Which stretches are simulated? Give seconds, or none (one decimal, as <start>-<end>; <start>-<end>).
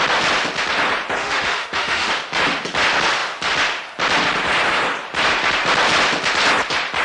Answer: 1.2-2.1